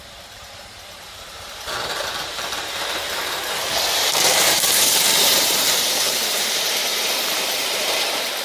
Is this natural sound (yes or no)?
no